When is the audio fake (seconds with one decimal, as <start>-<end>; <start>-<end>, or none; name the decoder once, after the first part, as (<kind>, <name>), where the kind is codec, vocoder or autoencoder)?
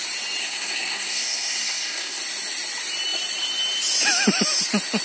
0.4-2.2 (codec, SNAC)